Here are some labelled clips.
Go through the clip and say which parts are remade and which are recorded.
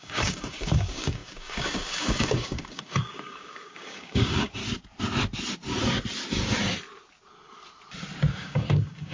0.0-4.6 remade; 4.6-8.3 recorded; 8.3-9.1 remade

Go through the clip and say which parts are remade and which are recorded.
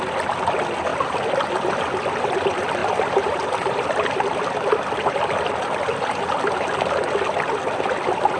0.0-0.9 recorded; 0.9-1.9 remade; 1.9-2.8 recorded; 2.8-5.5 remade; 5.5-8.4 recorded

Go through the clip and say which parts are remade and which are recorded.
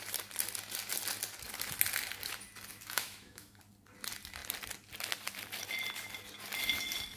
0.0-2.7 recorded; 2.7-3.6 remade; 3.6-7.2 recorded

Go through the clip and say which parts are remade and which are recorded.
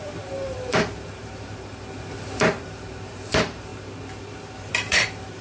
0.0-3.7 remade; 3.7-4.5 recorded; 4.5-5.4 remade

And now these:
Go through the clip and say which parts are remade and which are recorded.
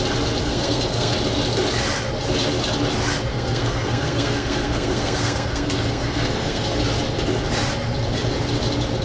0.0-0.4 recorded; 0.4-1.1 remade; 1.1-3.3 recorded; 3.3-6.8 remade; 6.8-9.0 recorded